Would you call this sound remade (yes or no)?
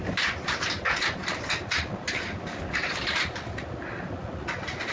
no